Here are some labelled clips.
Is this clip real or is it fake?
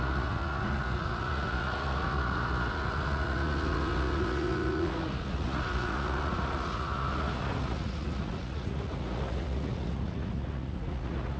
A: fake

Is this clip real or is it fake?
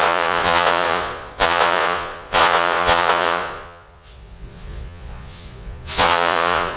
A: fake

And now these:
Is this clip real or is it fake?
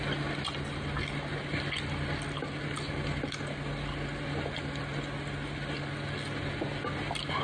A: real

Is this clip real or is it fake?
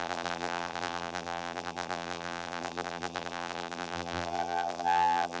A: fake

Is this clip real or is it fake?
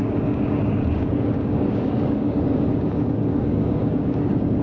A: fake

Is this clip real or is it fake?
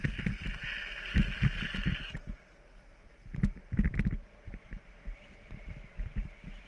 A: real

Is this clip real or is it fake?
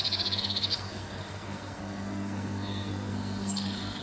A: fake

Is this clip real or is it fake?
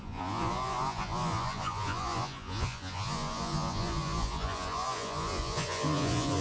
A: fake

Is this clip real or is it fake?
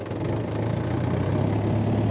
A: real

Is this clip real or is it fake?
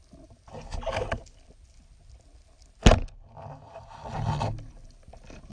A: real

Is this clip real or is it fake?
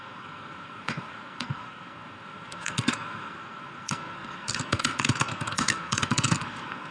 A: fake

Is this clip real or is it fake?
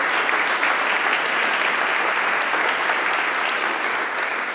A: real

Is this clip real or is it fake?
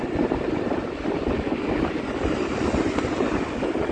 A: real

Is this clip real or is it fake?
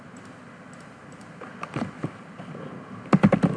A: real